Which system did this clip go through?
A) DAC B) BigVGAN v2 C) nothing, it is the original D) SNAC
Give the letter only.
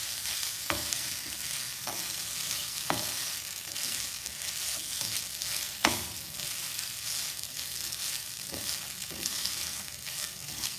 D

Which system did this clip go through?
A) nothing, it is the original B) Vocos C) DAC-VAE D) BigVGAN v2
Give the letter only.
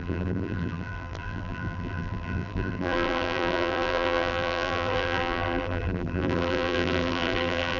D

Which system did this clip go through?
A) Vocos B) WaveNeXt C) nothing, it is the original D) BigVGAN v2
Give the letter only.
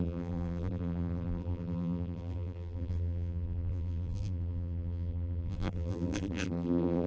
D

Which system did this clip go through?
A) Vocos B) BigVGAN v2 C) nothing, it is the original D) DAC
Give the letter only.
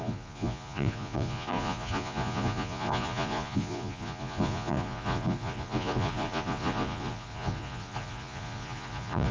A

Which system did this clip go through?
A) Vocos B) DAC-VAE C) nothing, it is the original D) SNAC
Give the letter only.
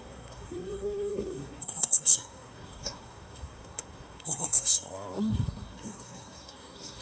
D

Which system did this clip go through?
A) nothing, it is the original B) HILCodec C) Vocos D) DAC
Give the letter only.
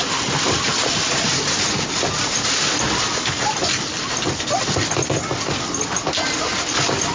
A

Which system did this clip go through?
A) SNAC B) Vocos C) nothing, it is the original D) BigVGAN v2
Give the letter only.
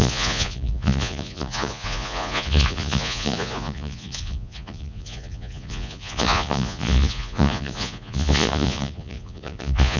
B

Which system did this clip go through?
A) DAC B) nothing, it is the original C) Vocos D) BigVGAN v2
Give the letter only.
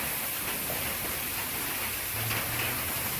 B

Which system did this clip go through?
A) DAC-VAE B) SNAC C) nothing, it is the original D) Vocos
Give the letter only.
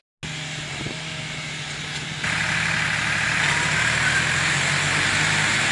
C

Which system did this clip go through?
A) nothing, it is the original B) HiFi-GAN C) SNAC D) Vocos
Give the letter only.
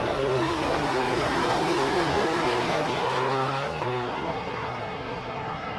C